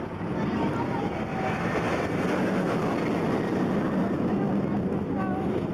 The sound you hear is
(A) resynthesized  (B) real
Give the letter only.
B